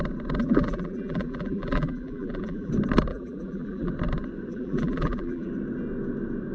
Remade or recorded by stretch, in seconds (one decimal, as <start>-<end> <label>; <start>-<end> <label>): 0.0-0.4 recorded; 0.4-2.7 remade; 2.7-3.1 recorded; 3.1-3.9 remade; 3.9-4.5 recorded; 4.5-5.5 remade; 5.5-6.5 recorded